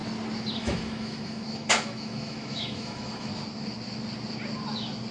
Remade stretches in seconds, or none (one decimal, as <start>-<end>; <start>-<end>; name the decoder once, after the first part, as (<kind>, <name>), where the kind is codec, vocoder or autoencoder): 0.6-3.3 (autoencoder, DAC-VAE)